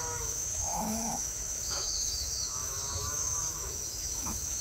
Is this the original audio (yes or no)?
no